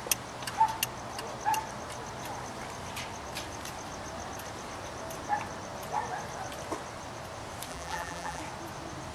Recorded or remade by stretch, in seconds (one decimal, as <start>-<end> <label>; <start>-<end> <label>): 0.0-7.7 recorded; 7.7-8.4 remade; 8.4-9.1 recorded